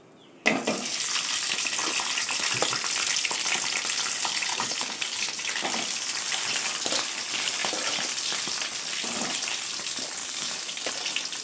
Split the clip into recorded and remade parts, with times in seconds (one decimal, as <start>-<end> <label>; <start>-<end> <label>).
0.0-4.5 recorded; 4.5-5.3 remade; 5.3-10.2 recorded; 10.2-10.9 remade; 10.9-11.4 recorded